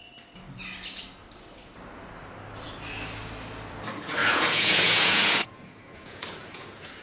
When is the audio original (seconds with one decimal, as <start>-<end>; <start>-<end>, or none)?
0.0-4.2